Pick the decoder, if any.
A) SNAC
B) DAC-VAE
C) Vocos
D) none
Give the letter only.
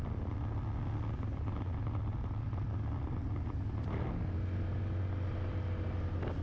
D